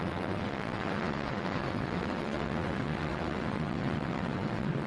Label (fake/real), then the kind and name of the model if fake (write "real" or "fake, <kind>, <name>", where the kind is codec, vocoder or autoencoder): fake, vocoder, WaveNeXt